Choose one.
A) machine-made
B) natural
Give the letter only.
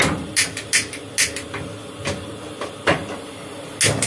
B